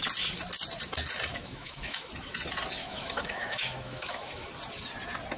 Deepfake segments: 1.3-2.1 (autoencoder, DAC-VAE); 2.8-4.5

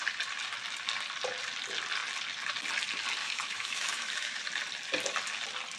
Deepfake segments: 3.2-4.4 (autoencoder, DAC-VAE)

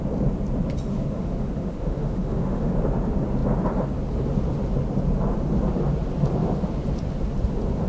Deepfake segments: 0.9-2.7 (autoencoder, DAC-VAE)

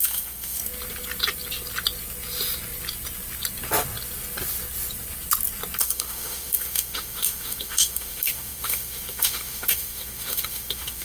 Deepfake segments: 0.0-0.6 (autoencoder, DAC-VAE); 5.8-11.0